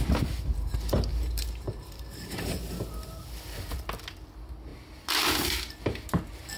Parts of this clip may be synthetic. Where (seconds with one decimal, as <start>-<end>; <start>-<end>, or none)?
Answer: 1.1-2.6